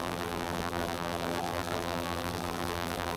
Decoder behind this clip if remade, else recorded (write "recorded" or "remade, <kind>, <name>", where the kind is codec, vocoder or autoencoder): remade, vocoder, BigVGAN v2